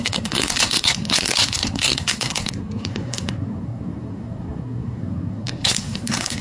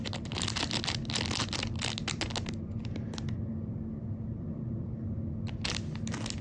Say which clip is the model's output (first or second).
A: first